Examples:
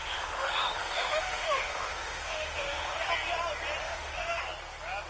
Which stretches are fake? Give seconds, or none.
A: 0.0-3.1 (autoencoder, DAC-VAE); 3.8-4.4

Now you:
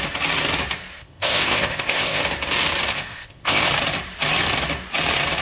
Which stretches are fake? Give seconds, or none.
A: 1.0-2.2 (codec, ZipCodec); 2.9-3.6

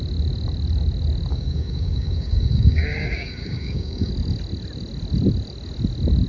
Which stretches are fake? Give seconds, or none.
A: 1.3-4.1 (codec, DAC)

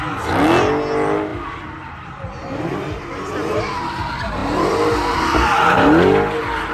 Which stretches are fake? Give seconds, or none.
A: none

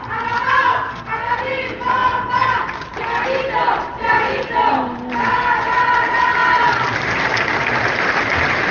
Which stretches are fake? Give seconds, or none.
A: 0.6-1.4 (codec, SNAC)